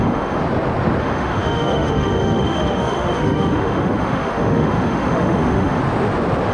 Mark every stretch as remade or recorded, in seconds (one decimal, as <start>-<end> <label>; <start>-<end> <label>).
0.0-0.4 remade; 0.4-1.0 recorded; 1.0-5.8 remade; 5.8-6.5 recorded